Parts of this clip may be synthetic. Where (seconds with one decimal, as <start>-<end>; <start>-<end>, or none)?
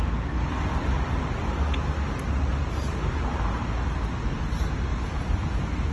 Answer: 2.5-3.9; 4.9-5.5